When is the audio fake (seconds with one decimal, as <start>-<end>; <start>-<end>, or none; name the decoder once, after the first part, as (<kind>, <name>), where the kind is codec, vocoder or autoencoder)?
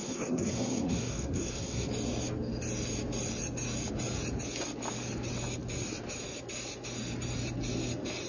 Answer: 0.0-1.9 (codec, SNAC)